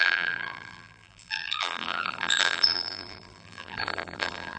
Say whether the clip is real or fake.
fake